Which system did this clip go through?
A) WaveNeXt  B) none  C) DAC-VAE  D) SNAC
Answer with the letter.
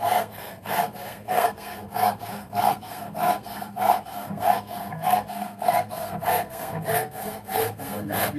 D